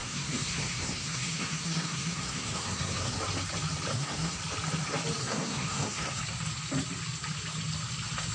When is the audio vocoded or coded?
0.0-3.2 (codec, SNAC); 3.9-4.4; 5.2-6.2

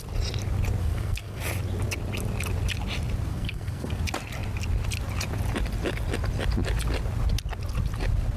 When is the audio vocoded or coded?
0.8-1.4 (codec, SNAC); 3.3-4.0

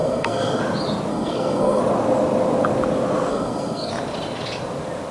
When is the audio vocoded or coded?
0.0-0.6 (codec, SNAC); 1.1-1.8; 3.3-3.9